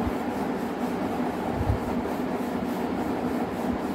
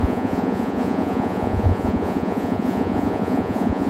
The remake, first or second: second